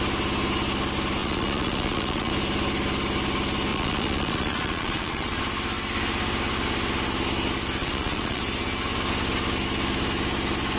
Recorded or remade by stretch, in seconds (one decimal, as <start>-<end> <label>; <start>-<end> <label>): 0.0-1.2 recorded; 1.2-2.3 remade; 2.3-3.7 recorded; 3.7-5.4 remade; 5.4-7.8 recorded; 7.8-8.4 remade; 8.4-10.8 recorded